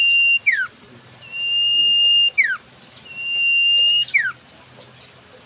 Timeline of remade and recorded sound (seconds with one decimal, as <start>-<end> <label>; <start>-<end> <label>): 0.0-5.5 recorded

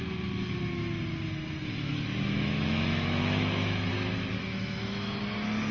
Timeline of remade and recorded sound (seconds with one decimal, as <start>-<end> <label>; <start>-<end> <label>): 0.0-1.9 recorded; 1.9-3.9 remade; 3.9-4.5 recorded; 4.5-5.2 remade; 5.2-5.7 recorded

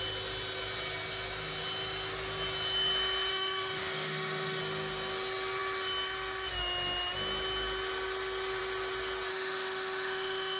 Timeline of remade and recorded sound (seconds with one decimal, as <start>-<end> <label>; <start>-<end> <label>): 0.0-3.3 recorded; 3.3-4.6 remade; 4.6-9.3 recorded; 9.3-10.6 remade

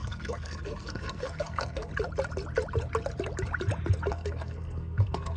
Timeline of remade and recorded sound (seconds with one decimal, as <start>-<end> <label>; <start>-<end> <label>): 0.0-1.9 remade; 1.9-4.1 recorded; 4.1-5.4 remade

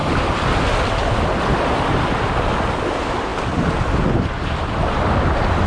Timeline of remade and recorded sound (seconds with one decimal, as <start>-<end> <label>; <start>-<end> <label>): 0.0-5.7 recorded

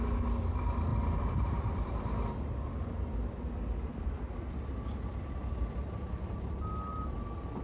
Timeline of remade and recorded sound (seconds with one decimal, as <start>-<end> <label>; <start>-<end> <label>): 0.0-7.6 recorded

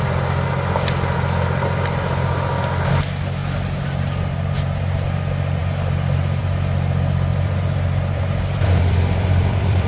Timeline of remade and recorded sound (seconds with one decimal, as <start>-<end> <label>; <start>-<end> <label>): 0.0-7.3 recorded; 7.3-9.9 remade

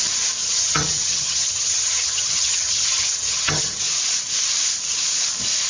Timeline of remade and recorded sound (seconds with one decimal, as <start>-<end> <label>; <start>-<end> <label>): 0.0-0.4 recorded; 0.4-3.8 remade; 3.8-5.7 recorded